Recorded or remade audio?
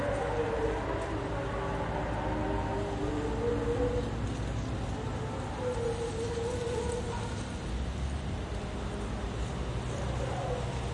recorded